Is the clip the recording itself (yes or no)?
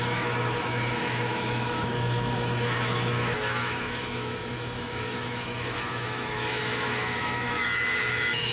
no